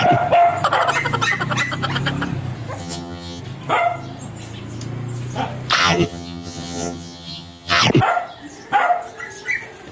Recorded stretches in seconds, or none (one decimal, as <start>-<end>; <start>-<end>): 0.0-2.8; 3.4-5.8; 7.8-9.9